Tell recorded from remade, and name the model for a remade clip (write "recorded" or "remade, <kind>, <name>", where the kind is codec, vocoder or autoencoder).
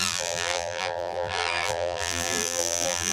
remade, vocoder, BigVGAN v2